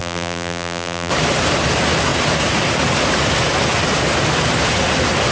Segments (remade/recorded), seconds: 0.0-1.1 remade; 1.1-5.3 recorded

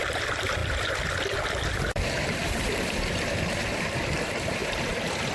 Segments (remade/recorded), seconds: 0.0-5.3 remade

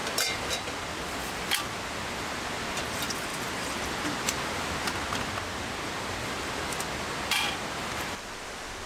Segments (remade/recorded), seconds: 0.0-1.3 remade; 1.3-3.3 recorded; 3.3-3.9 remade; 3.9-8.9 recorded

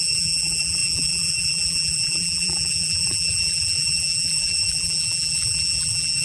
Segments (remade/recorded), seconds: 0.0-6.2 remade

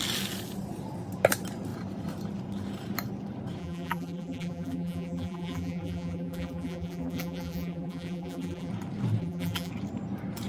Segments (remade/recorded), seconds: 0.0-3.6 recorded; 3.6-8.7 remade; 8.7-9.2 recorded; 9.2-9.7 remade; 9.7-10.5 recorded

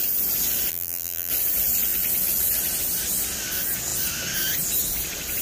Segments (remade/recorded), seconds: 0.0-0.7 recorded; 0.7-1.3 remade; 1.3-5.4 recorded

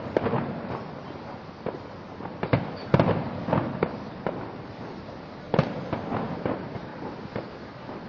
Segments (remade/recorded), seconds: 0.0-8.1 recorded

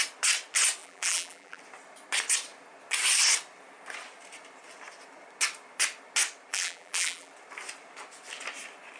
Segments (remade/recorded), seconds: 0.0-0.8 recorded; 0.8-1.6 remade; 1.6-6.5 recorded; 6.5-7.3 remade; 7.3-9.0 recorded